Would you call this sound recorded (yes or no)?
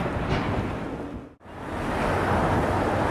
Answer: yes